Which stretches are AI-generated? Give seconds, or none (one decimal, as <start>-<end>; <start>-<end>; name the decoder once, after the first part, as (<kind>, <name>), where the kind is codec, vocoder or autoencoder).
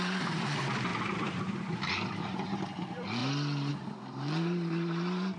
0.0-3.2 (vocoder, BigVGAN v2); 3.7-5.4